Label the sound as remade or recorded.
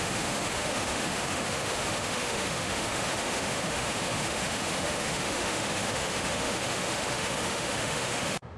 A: remade